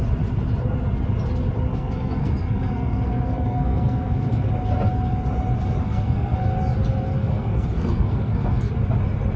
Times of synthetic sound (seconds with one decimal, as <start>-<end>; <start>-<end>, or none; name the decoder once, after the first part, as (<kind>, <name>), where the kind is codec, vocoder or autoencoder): 1.7-4.5 (codec, SNAC); 5.8-6.4; 7.2-8.7